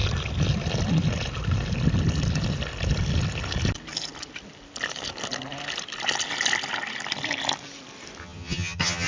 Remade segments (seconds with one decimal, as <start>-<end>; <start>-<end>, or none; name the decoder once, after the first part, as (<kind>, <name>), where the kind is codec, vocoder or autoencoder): 8.2-9.1 (vocoder, HiFi-GAN)